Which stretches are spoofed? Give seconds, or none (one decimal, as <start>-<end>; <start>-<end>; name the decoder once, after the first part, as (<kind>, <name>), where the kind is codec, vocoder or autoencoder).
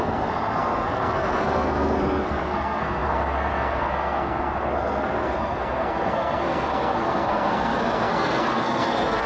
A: 0.0-9.3 (codec, SNAC)